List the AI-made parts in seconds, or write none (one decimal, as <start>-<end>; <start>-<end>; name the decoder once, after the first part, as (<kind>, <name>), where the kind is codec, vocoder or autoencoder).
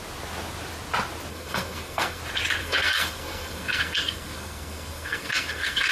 1.3-2.2 (codec, SNAC); 2.6-5.9